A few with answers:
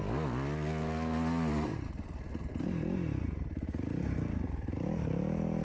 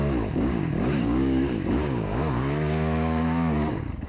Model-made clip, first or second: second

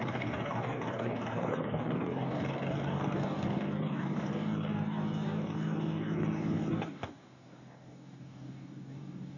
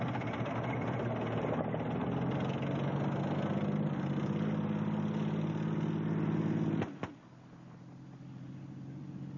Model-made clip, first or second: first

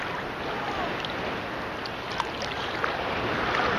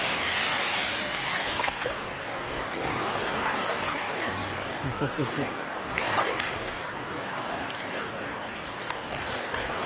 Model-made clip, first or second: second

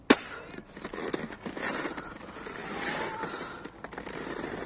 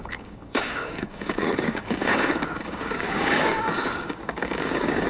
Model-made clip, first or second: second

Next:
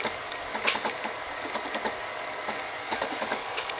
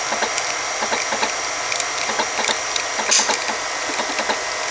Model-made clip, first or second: first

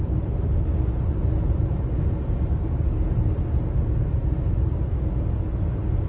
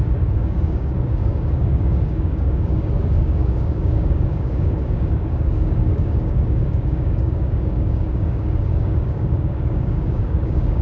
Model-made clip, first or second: second